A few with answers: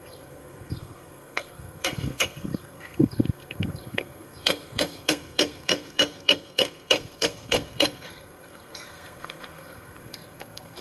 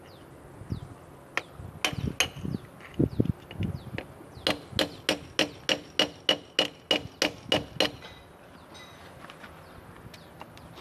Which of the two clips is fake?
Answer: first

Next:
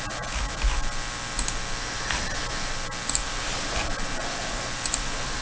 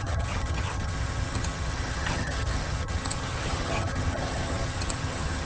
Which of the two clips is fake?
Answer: second